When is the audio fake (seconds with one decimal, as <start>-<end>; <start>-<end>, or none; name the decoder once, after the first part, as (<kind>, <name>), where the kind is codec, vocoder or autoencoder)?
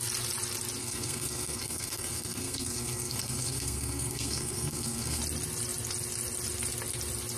0.8-5.2 (codec, SNAC)